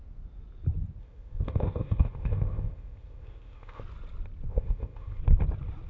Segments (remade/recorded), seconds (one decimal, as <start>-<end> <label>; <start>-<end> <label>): 0.0-1.0 recorded; 1.0-3.8 remade; 3.8-4.5 recorded; 4.5-5.2 remade; 5.2-5.9 recorded